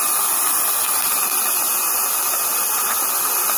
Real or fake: real